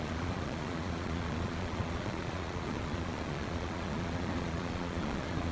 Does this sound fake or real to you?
fake